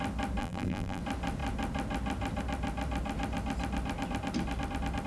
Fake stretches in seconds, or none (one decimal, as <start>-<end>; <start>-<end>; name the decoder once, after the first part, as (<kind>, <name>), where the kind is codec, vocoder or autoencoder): 0.4-1.0 (vocoder, BigVGAN v2)